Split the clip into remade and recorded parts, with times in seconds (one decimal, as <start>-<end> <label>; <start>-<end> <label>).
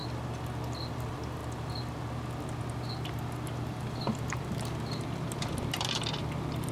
0.0-0.9 recorded; 0.9-1.4 remade; 1.4-3.6 recorded; 3.6-6.7 remade